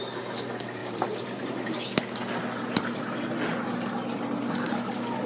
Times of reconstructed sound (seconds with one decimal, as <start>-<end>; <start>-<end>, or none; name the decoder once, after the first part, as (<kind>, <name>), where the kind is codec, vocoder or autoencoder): 0.8-1.7 (vocoder, BigVGAN v2)